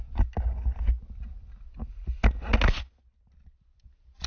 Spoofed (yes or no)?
no